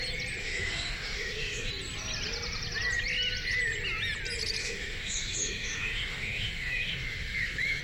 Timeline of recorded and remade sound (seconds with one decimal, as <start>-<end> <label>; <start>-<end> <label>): 0.0-0.4 recorded; 0.4-1.7 remade; 1.7-4.6 recorded; 4.6-7.8 remade